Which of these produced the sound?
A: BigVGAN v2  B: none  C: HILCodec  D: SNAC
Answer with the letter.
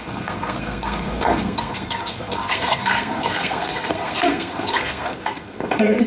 D